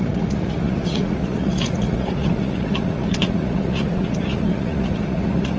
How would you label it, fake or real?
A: fake